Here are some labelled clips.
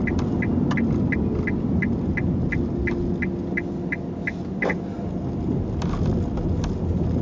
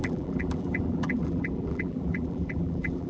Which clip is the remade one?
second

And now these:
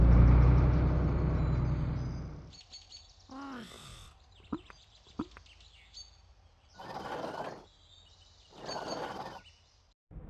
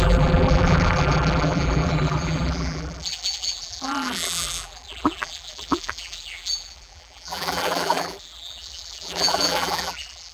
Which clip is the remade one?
second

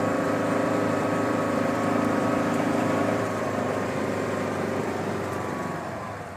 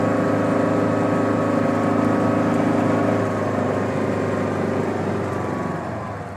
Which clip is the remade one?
first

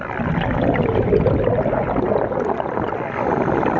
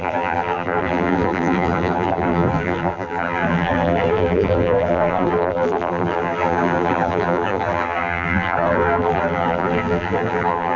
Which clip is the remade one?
second